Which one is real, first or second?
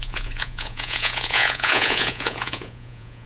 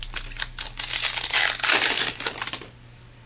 second